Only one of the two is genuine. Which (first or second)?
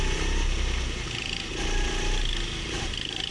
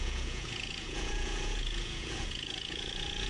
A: first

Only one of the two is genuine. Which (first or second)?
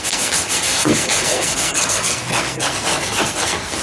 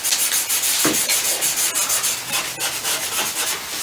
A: second